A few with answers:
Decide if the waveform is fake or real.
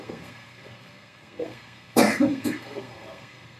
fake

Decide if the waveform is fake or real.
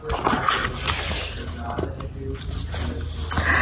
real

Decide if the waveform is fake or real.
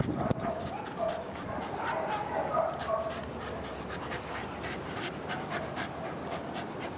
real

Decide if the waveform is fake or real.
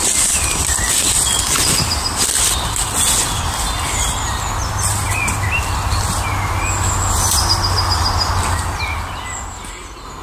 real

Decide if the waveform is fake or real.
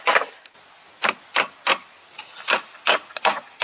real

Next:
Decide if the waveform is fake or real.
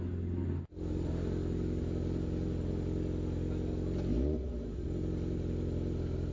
real